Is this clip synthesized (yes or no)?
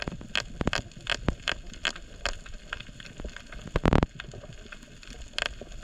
no